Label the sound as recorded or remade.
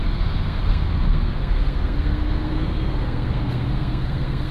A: remade